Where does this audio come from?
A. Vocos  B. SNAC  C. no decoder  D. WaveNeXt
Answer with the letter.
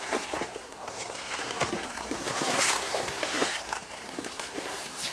B